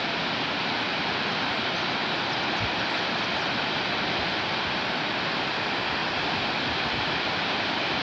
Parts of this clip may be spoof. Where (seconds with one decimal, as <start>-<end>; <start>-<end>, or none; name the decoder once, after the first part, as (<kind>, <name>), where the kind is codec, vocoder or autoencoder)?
none